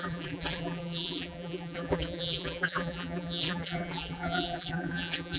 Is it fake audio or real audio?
fake